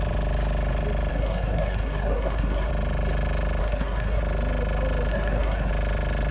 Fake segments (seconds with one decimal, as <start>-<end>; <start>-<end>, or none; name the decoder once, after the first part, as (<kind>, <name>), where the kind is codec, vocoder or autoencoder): 1.1-2.7 (codec, SNAC); 3.6-4.2; 5.1-5.7